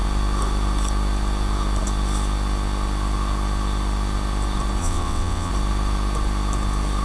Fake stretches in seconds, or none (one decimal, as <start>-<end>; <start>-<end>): 4.8-5.5